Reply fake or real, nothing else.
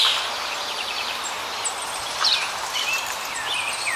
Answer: fake